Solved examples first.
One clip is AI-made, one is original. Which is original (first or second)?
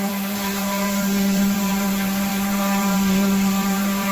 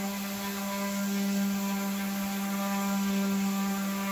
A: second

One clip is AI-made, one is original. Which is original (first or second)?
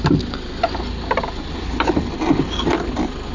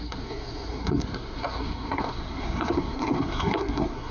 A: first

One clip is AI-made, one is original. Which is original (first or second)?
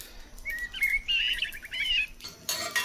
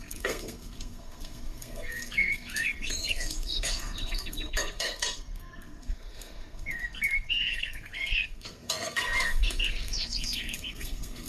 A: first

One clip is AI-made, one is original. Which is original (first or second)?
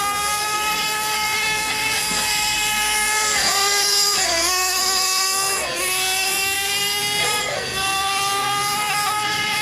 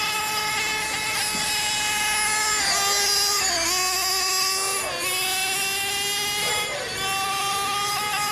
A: second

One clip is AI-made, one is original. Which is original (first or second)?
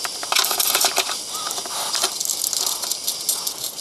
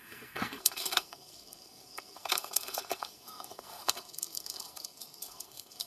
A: first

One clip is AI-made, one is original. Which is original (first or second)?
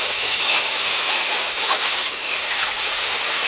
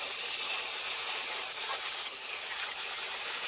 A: second